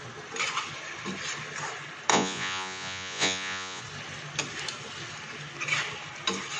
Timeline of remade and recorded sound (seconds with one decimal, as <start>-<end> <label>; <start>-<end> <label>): 0.0-2.1 recorded; 2.1-3.8 remade; 3.8-6.6 recorded